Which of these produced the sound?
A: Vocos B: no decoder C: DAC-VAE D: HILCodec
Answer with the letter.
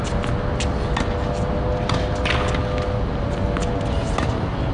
B